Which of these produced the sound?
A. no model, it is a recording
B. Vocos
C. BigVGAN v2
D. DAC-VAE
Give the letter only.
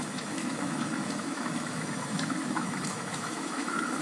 D